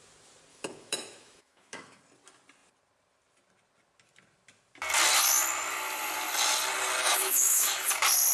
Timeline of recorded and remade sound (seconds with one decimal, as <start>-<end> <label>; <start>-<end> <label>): 0.0-0.5 recorded; 0.5-2.0 remade; 2.0-7.0 recorded; 7.0-7.9 remade; 7.9-8.3 recorded